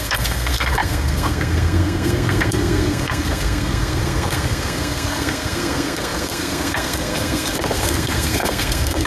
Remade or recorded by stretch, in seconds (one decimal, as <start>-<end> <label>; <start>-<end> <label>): 0.0-9.1 remade